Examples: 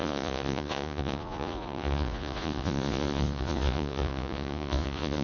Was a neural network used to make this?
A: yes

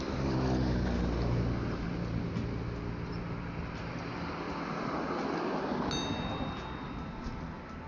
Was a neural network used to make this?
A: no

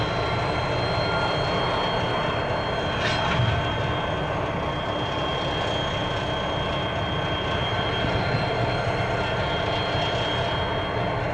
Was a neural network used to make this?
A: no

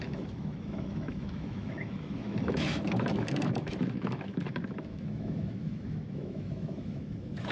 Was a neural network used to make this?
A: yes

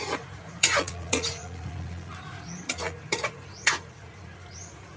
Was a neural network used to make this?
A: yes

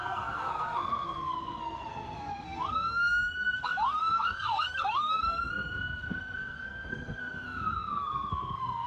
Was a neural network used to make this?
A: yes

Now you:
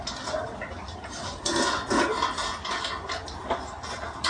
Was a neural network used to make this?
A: no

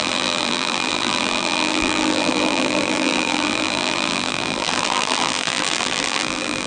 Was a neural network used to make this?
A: yes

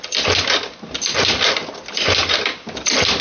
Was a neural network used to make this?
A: no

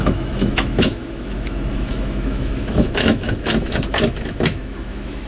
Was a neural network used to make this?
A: yes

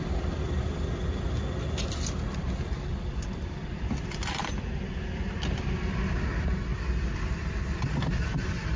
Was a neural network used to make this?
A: yes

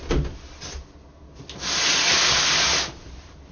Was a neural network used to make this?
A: no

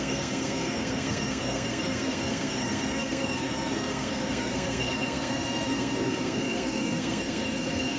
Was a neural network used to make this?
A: yes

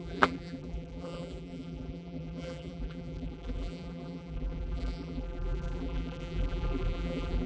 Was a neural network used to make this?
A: yes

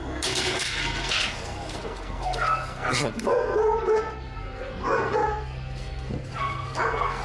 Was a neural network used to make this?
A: yes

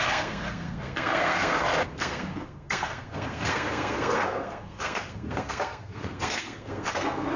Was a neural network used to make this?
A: yes